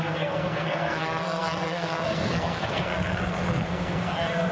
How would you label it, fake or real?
fake